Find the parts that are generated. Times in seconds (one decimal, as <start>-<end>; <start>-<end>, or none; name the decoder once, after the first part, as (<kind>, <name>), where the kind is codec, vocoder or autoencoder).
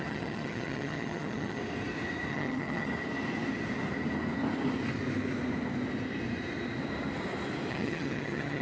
0.0-1.6 (vocoder, HiFi-GAN); 2.3-2.9; 7.7-8.6